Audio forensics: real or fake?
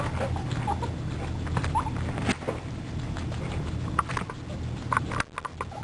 real